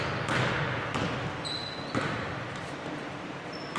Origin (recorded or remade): recorded